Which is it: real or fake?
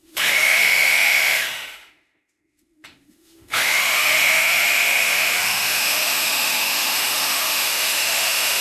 fake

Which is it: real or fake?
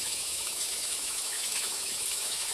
fake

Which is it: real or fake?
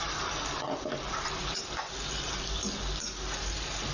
real